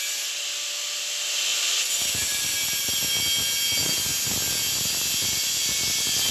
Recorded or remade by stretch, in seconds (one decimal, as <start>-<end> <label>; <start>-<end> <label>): 0.0-6.3 recorded